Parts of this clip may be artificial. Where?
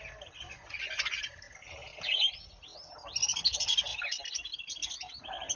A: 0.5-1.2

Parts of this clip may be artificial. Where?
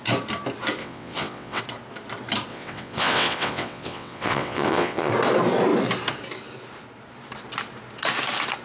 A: 0.8-1.6; 2.5-5.1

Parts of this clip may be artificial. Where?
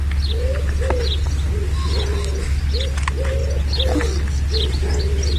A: none